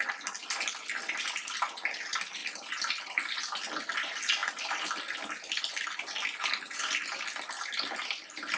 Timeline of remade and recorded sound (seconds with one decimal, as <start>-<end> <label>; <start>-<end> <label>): 0.0-8.6 recorded